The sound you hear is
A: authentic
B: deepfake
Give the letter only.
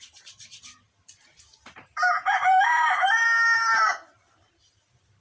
B